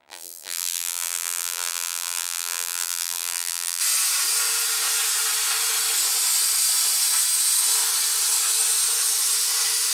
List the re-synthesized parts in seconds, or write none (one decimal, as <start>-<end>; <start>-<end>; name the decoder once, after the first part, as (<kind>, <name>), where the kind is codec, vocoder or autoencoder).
0.0-3.8 (vocoder, BigVGAN v2)